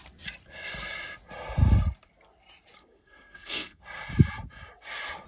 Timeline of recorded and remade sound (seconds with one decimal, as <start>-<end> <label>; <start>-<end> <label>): 0.0-2.8 recorded; 2.8-3.8 remade; 3.8-5.3 recorded